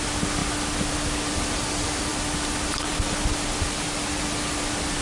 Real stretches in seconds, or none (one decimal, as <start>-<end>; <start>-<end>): 0.0-5.0